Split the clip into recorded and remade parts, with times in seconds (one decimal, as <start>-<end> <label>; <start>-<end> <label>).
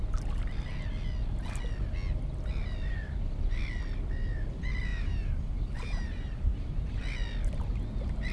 0.0-4.9 recorded; 4.9-7.0 remade; 7.0-8.3 recorded